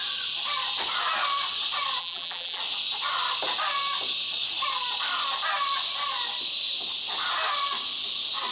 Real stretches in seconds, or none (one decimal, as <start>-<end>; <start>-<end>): 0.0-2.0; 2.6-8.5